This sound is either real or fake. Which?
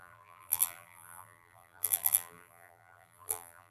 fake